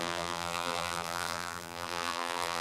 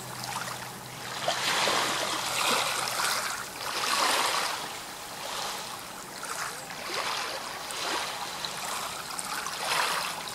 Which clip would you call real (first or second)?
second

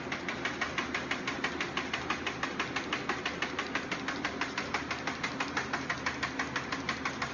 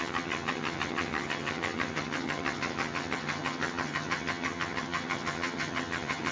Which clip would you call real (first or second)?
first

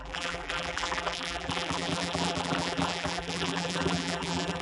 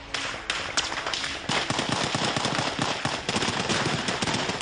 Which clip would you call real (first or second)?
second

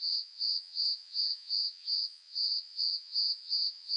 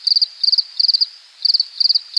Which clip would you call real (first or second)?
second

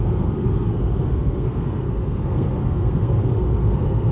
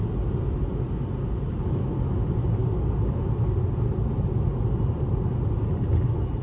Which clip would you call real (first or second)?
second